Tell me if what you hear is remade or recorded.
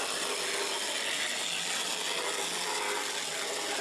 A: recorded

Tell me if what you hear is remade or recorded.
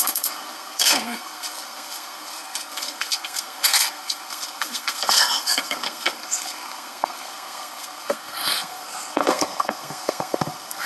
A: remade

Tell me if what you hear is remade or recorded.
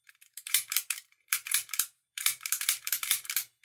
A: remade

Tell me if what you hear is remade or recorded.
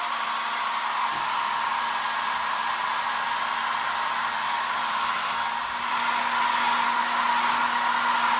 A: recorded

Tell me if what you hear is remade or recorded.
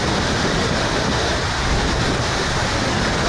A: recorded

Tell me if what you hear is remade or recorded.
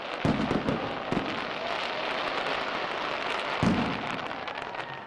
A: recorded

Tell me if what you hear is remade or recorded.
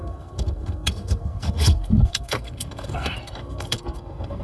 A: remade